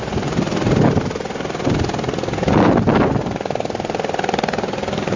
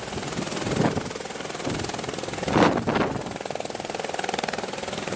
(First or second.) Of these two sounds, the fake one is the second